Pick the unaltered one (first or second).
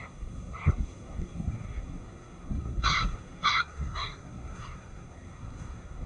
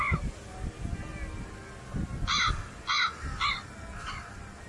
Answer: second